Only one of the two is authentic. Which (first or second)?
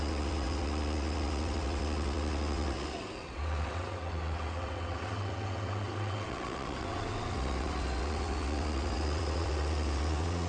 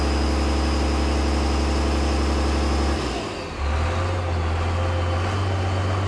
second